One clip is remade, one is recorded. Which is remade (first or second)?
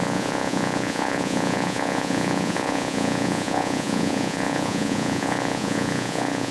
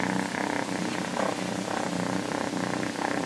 first